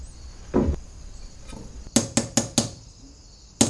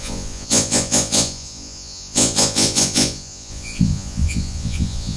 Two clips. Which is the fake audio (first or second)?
second